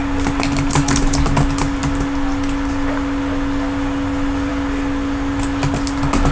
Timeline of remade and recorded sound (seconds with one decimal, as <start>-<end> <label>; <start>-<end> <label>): 0.0-6.3 recorded

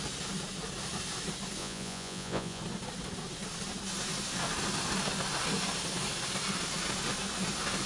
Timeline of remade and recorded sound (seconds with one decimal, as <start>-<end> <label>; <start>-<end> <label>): 0.0-1.6 recorded; 1.6-2.6 remade; 2.6-7.9 recorded